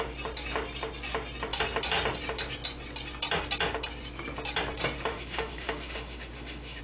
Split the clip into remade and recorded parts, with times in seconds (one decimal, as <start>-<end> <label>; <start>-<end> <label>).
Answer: 0.0-5.1 recorded; 5.1-6.8 remade